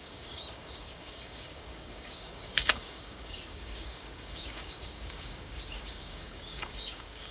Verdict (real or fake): fake